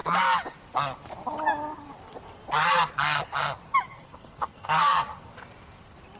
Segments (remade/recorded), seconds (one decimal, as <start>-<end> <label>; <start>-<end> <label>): 0.0-3.9 recorded; 3.9-5.3 remade; 5.3-6.2 recorded